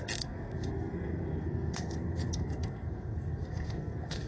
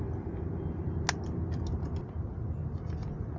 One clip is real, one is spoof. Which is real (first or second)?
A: second